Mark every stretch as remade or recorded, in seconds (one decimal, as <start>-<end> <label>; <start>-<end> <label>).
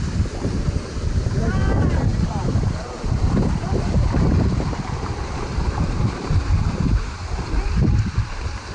0.0-8.7 remade